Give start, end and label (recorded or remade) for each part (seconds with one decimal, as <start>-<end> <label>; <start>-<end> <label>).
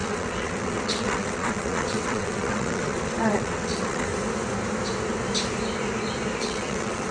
0.0-4.1 remade; 4.1-6.4 recorded; 6.4-7.1 remade